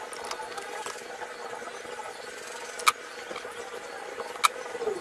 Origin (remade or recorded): recorded